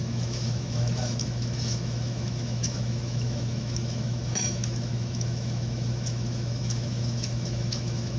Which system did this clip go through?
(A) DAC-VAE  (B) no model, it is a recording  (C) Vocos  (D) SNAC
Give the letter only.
A